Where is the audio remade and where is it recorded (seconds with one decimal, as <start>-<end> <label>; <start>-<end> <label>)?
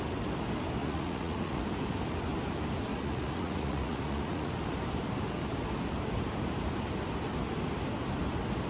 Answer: 0.0-0.8 recorded; 0.8-1.6 remade; 1.6-2.9 recorded; 2.9-4.5 remade; 4.5-8.7 recorded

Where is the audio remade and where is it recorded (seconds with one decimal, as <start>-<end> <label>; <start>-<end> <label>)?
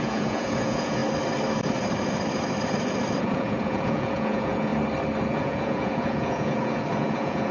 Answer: 0.0-1.0 remade; 1.0-3.2 recorded; 3.2-4.7 remade; 4.7-5.2 recorded; 5.2-7.5 remade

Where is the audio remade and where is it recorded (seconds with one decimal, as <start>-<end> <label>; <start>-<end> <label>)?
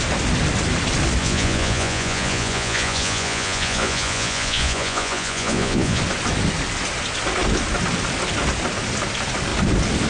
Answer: 0.0-1.2 recorded; 1.2-6.0 remade; 6.0-10.1 recorded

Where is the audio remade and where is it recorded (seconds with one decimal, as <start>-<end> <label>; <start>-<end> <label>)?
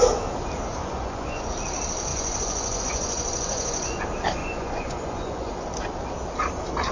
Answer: 0.0-0.8 recorded; 0.8-1.5 remade; 1.5-2.1 recorded; 2.1-4.0 remade; 4.0-4.4 recorded; 4.4-5.5 remade; 5.5-6.9 recorded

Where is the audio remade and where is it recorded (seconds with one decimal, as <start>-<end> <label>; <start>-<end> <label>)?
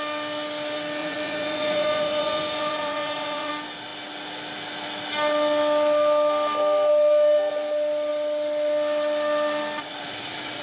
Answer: 0.0-1.0 recorded; 1.0-3.5 remade; 3.5-10.6 recorded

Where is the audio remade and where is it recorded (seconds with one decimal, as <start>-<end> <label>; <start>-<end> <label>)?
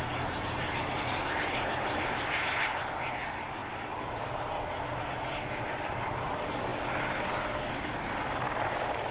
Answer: 0.0-9.1 recorded